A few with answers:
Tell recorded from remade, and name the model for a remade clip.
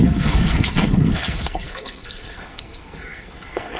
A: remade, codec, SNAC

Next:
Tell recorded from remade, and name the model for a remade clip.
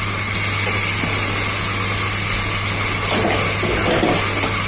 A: recorded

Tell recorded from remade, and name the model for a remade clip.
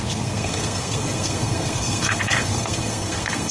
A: remade, codec, SNAC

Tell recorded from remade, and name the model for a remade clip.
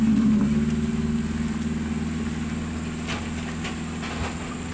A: recorded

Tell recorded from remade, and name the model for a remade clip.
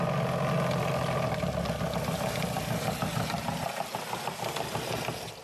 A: recorded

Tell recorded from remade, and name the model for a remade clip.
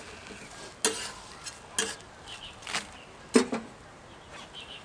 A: recorded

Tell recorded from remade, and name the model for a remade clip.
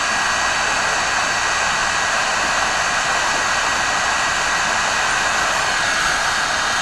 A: recorded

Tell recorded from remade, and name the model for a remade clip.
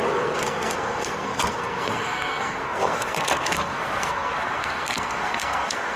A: remade, codec, SNAC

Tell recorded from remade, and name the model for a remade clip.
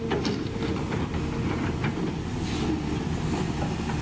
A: recorded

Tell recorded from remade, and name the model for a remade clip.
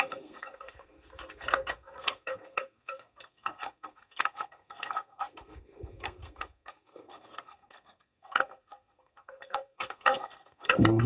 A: remade, codec, SNAC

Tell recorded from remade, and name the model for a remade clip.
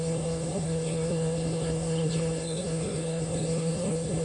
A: remade, codec, SNAC